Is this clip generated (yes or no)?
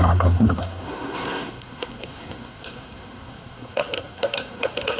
yes